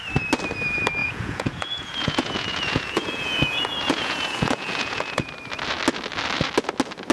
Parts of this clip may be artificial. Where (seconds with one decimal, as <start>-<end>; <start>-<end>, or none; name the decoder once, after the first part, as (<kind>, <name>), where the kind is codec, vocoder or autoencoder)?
1.0-5.3 (vocoder, Vocos)